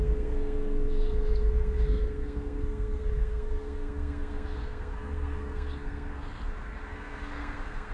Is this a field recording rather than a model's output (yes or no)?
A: no